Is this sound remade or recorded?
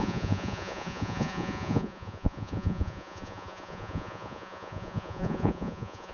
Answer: remade